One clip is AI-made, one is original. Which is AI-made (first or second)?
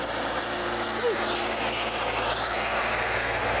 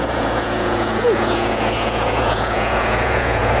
second